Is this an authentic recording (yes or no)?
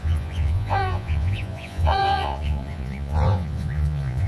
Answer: no